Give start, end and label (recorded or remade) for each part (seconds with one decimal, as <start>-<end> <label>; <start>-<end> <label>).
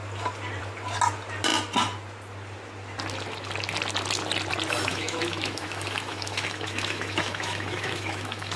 0.0-4.9 recorded; 4.9-8.6 remade